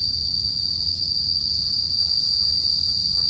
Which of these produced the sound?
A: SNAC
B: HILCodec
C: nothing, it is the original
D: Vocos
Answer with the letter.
D